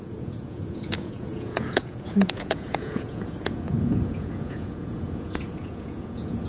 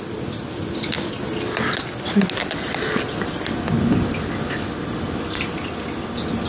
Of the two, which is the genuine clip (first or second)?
second